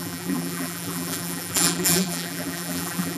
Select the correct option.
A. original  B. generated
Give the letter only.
B